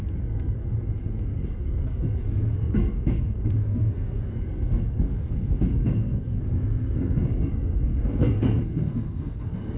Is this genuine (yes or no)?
no